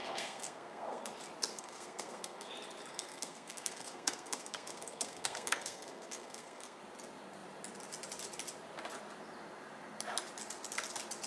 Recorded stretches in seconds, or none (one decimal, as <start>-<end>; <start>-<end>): 1.1-1.5; 2.5-2.9; 6.8-11.3